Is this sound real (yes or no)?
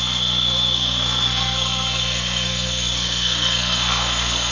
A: no